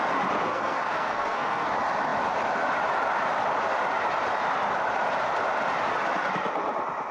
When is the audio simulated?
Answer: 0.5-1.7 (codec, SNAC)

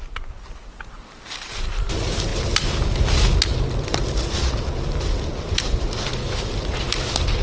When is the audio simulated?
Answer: none